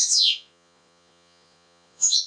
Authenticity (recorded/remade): remade